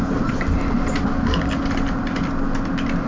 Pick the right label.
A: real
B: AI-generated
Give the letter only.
A